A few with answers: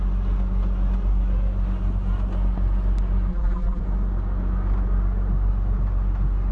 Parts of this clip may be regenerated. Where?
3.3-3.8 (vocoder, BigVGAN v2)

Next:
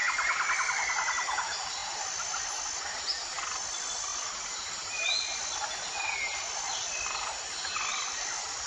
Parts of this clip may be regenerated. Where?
0.0-0.9 (vocoder, BigVGAN v2); 4.1-4.7; 7.9-8.7